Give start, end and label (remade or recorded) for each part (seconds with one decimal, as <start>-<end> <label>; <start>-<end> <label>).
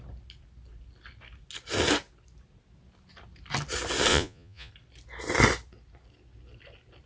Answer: 0.0-4.1 recorded; 4.1-4.7 remade; 4.7-7.1 recorded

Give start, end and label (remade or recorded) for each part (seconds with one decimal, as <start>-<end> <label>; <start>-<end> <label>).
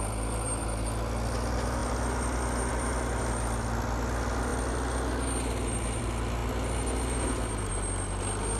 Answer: 0.0-8.6 recorded